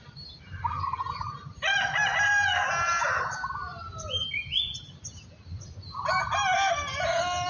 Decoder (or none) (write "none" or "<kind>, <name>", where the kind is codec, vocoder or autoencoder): none